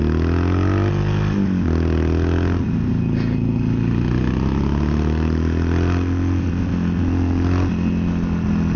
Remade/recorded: recorded